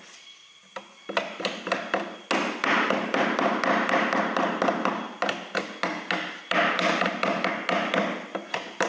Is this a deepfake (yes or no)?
no